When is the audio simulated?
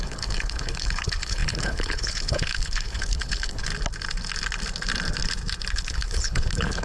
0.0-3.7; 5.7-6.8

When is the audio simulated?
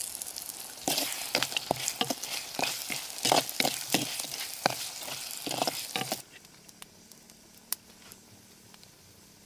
none